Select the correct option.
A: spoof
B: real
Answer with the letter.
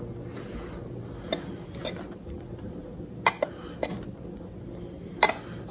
B